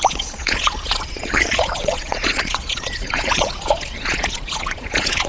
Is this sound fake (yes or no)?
yes